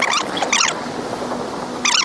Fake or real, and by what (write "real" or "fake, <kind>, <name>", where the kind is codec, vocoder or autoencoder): real